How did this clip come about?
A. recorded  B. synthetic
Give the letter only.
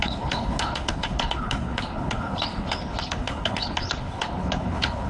B